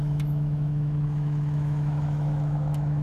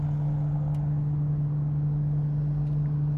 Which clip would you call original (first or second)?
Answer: second